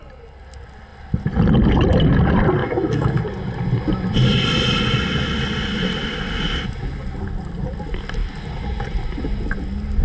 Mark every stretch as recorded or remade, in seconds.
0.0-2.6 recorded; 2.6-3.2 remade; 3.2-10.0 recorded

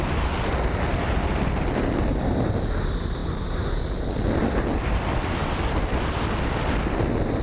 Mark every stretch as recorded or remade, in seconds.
0.0-7.4 recorded

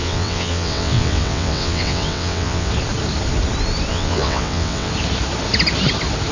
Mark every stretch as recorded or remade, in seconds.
0.0-2.7 remade; 2.7-3.9 recorded; 3.9-4.9 remade; 4.9-6.3 recorded

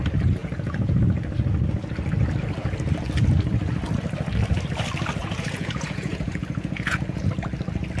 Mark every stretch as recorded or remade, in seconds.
0.0-0.4 recorded; 0.4-1.0 remade; 1.0-5.2 recorded; 5.2-7.3 remade; 7.3-8.0 recorded

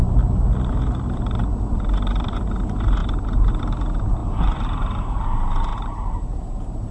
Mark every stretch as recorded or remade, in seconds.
0.0-3.0 recorded; 3.0-3.5 remade; 3.5-5.7 recorded; 5.7-6.9 remade

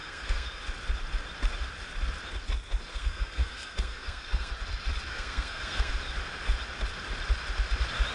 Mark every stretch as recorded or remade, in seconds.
0.0-0.6 remade; 0.6-2.9 recorded; 2.9-4.6 remade; 4.6-5.1 recorded; 5.1-5.9 remade; 5.9-8.1 recorded